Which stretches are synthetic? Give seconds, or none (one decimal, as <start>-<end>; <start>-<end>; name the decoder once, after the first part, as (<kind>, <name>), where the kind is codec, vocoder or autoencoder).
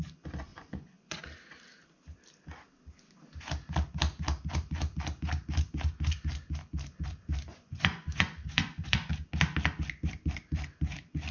0.5-1.2 (vocoder, Vocos); 7.5-9.1